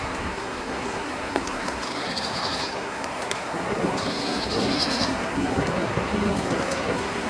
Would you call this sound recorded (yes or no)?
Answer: no